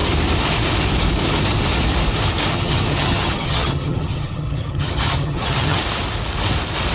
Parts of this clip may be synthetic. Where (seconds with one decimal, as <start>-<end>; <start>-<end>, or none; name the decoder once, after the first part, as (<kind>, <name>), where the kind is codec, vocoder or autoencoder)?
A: 2.5-5.8 (vocoder, HiFi-GAN)